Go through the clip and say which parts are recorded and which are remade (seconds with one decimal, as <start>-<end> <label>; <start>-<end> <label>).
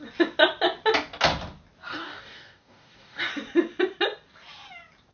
0.0-1.9 recorded; 1.9-3.3 remade; 3.3-5.1 recorded